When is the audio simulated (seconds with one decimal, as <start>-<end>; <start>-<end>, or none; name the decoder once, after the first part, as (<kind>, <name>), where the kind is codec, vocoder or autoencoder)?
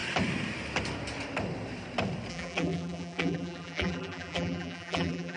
2.3-5.4 (vocoder, BigVGAN v2)